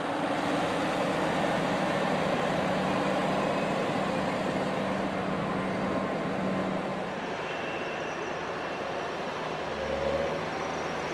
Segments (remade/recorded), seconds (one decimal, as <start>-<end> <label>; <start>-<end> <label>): 0.0-6.9 recorded; 6.9-9.7 remade; 9.7-11.1 recorded